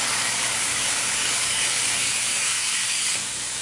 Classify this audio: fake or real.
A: fake